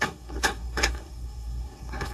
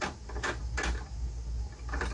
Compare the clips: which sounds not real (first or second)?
first